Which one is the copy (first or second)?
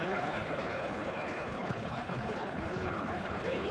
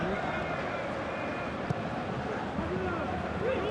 first